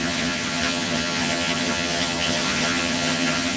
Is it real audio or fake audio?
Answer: fake